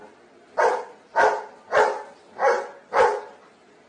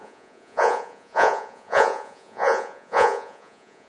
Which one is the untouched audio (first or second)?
first